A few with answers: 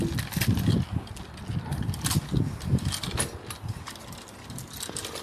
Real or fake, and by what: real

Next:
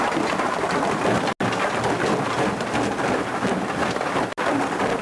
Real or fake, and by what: real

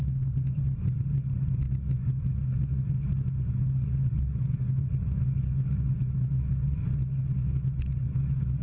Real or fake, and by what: real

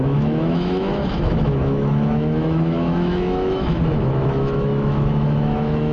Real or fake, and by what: fake, autoencoder, DAC-VAE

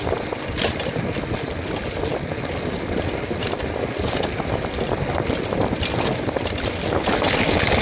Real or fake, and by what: real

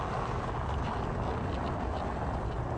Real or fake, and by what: real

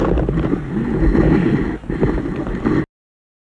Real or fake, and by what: real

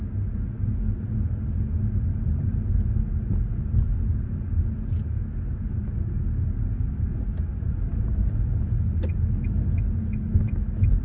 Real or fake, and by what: real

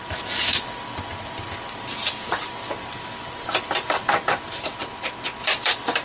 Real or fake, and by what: fake, vocoder, BigVGAN v2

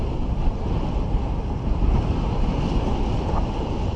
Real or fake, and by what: real